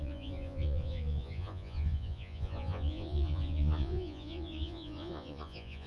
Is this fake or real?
fake